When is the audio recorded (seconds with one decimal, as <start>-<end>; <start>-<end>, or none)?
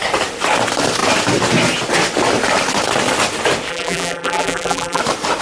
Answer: 0.0-3.7; 5.0-5.4